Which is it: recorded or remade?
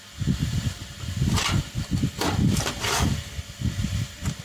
remade